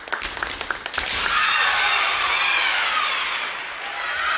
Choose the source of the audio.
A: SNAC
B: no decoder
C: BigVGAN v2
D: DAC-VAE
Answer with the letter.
B